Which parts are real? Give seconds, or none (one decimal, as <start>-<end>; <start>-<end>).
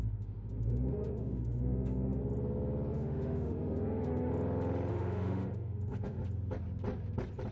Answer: 2.2-2.9; 4.3-4.9; 6.2-7.5